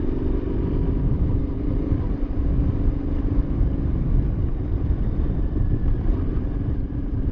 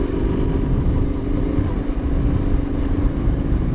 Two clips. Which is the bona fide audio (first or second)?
second